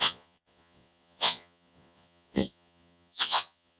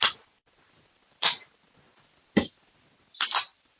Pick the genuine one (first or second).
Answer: second